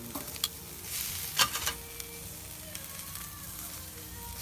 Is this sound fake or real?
real